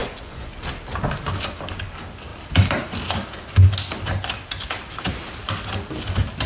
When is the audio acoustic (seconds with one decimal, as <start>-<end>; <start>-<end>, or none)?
0.5-6.5